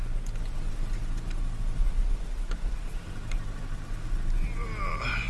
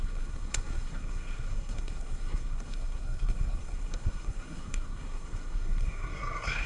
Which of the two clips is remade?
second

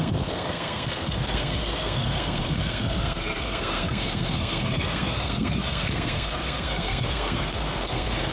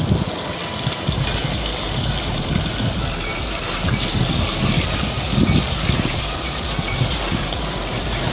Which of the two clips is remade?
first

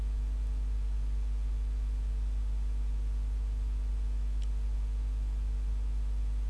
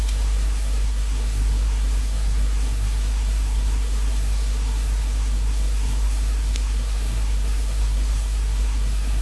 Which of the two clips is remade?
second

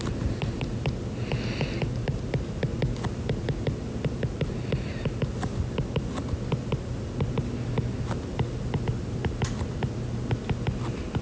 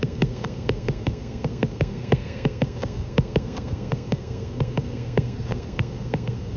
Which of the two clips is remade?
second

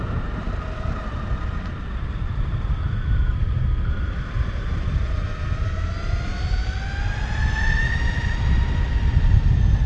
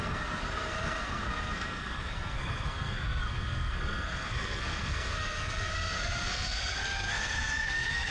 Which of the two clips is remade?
second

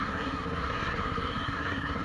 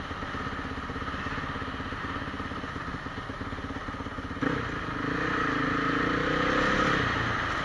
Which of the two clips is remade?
first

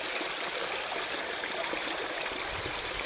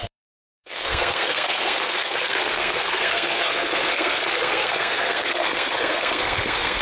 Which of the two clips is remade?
second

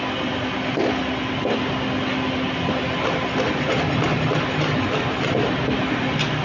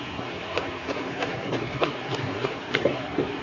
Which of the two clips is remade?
second